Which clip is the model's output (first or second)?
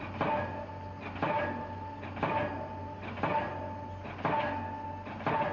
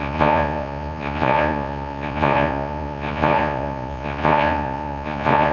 second